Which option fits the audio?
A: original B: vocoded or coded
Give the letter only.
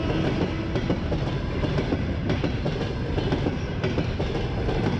A